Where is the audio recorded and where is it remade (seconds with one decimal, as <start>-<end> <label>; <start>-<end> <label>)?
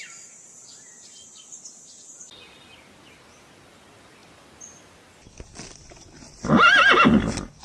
0.0-7.6 recorded